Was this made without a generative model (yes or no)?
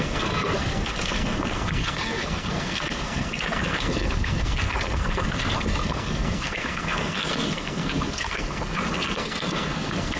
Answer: no